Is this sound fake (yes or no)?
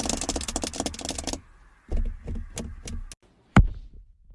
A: no